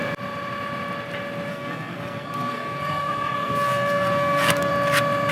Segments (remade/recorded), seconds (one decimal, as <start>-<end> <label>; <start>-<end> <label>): 0.0-1.5 recorded; 1.5-4.7 remade; 4.7-5.3 recorded